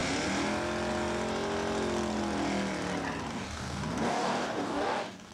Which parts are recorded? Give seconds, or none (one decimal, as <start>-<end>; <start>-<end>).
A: 0.0-3.3